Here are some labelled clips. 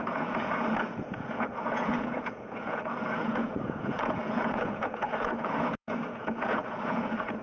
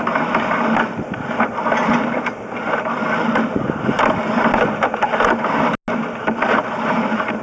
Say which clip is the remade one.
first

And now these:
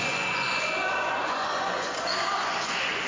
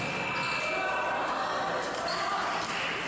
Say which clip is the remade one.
first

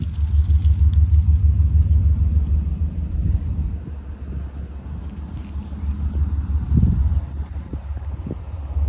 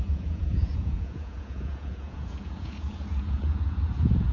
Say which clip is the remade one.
second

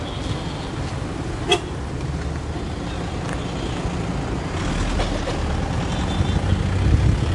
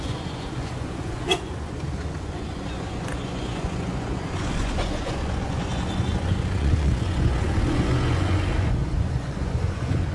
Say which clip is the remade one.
second